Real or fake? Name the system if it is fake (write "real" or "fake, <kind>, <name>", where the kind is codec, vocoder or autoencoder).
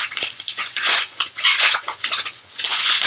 fake, vocoder, Vocos